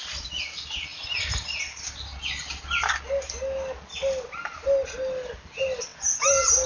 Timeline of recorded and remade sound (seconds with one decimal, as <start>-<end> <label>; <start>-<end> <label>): 0.0-6.7 recorded